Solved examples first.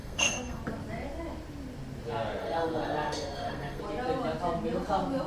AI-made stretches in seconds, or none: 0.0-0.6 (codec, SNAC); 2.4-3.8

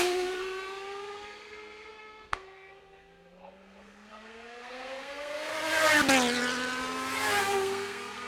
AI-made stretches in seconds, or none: 0.0-5.5 (codec, SNAC); 7.4-8.3

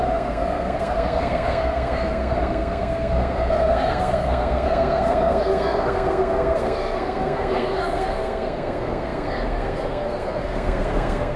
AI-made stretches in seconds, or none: 0.0-11.4 (codec, SNAC)

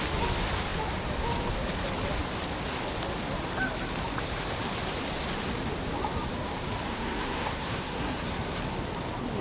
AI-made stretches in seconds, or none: 6.9-8.6 (codec, SNAC)

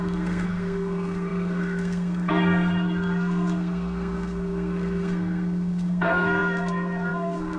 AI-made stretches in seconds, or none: 0.0-7.6 (codec, SNAC)